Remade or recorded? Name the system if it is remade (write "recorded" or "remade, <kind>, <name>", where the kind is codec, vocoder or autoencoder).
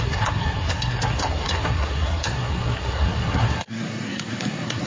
remade, codec, SNAC